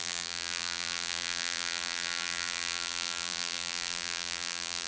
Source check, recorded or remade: remade